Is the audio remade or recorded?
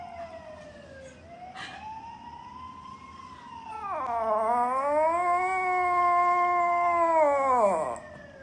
recorded